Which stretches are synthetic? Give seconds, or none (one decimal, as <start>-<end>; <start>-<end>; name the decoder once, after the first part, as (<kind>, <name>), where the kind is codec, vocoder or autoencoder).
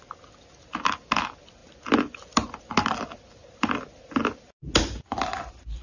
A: none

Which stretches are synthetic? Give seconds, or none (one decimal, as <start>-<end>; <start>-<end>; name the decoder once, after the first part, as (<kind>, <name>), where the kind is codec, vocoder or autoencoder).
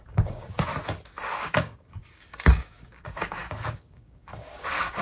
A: 0.0-0.7 (codec, DAC); 1.4-5.0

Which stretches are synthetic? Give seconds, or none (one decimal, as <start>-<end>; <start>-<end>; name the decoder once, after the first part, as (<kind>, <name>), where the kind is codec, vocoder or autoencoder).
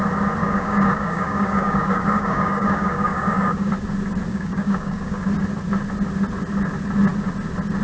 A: 0.4-3.7 (codec, DAC); 4.3-5.2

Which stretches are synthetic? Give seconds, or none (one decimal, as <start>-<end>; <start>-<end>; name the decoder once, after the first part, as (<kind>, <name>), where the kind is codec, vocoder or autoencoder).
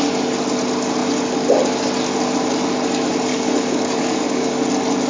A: 3.3-4.5 (codec, DAC)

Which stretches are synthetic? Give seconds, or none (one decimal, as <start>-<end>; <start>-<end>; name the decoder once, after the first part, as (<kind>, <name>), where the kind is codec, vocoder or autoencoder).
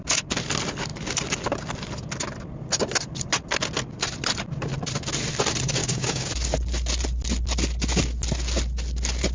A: 5.8-6.3 (codec, DAC)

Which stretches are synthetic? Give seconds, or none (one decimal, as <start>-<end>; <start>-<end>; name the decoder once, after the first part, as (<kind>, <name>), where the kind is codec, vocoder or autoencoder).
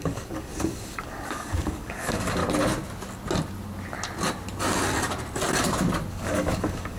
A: 0.0-2.4 (codec, DAC); 6.1-7.0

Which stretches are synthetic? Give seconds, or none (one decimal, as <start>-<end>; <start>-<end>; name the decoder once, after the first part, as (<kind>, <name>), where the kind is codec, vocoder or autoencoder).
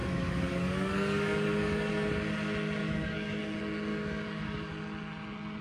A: 0.0-1.9 (codec, DAC); 2.8-3.4; 3.9-4.7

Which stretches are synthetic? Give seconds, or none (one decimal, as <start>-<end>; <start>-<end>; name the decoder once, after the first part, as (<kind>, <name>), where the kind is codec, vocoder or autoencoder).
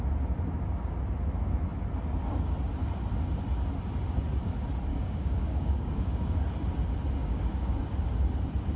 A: 4.9-6.4 (codec, DAC); 7.2-7.8